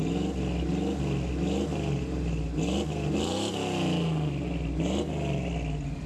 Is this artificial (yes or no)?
no